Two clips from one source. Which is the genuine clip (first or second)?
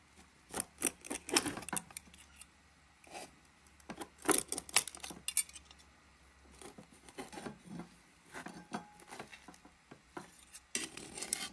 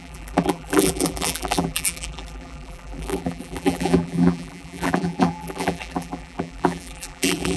first